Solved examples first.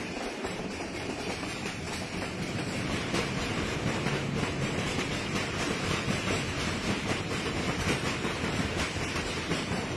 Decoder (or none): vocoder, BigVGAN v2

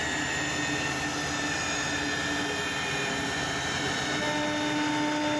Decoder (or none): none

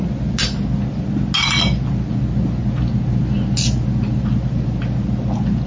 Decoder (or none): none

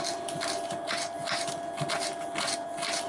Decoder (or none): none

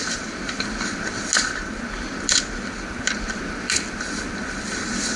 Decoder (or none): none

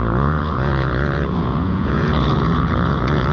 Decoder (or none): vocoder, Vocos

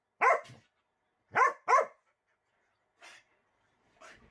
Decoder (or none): none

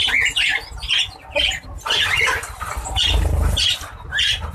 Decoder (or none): none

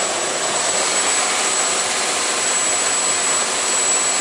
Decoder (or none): none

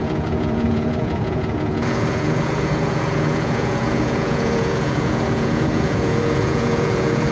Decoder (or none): vocoder, Vocos